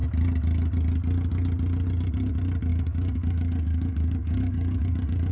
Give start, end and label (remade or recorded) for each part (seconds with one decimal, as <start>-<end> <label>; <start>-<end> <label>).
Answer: 0.0-2.7 recorded; 2.7-5.3 remade